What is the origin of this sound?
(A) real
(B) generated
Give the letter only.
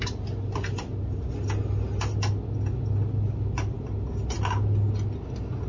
A